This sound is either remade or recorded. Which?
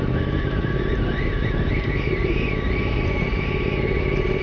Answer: remade